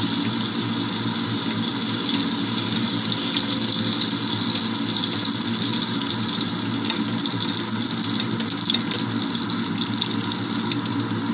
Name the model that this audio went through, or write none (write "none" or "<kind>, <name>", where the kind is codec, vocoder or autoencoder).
none